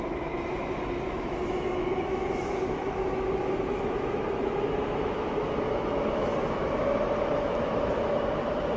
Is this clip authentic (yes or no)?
no